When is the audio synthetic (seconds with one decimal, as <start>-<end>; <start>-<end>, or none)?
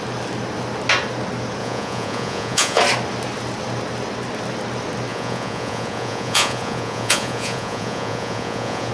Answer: 1.6-2.8; 5.1-8.9